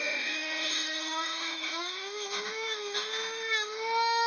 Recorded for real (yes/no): no